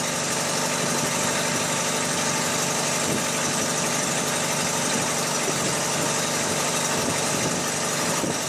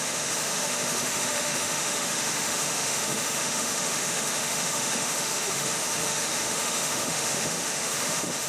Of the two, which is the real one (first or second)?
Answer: first